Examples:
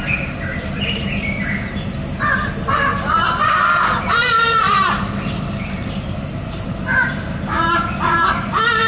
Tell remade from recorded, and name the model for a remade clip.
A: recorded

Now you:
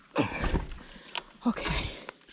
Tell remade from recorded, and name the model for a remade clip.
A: recorded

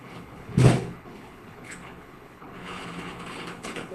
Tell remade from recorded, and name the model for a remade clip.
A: remade, codec, HILCodec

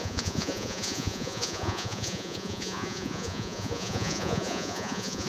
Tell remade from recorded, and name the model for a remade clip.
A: remade, vocoder, Vocos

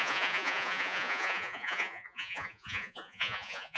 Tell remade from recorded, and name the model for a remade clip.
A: remade, vocoder, Vocos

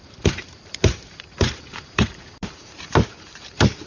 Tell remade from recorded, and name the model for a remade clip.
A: remade, vocoder, BigVGAN v2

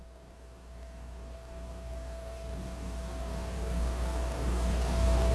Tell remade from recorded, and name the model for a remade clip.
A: remade, codec, DAC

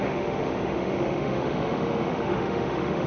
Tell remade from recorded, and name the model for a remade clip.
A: remade, autoencoder, DAC-VAE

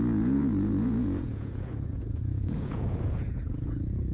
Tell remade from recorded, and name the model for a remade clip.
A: remade, vocoder, Vocos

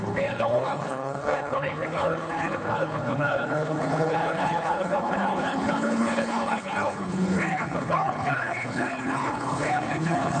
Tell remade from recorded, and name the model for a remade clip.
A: remade, codec, HILCodec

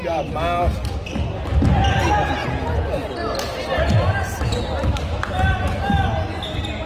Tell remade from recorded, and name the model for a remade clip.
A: recorded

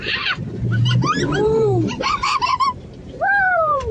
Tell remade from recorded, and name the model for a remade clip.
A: remade, vocoder, BigVGAN v2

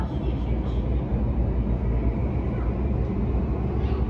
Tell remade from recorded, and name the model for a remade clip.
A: recorded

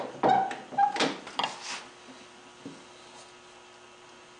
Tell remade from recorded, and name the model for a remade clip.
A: recorded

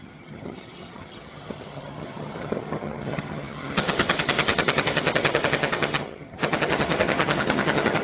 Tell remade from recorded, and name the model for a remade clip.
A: remade, vocoder, HiFi-GAN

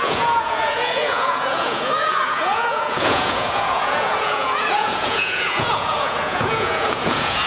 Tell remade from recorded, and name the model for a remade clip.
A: remade, vocoder, Vocos